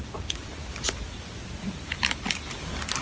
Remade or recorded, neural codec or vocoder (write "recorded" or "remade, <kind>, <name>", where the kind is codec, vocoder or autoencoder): recorded